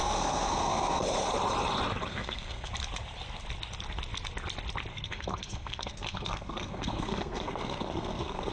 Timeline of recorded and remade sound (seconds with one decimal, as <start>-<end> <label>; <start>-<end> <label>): 0.0-1.0 remade; 1.0-2.1 recorded; 2.1-2.7 remade; 2.7-4.9 recorded; 4.9-8.5 remade